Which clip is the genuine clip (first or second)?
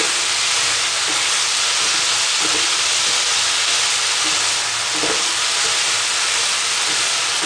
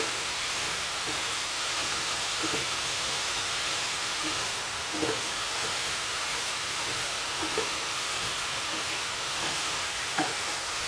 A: first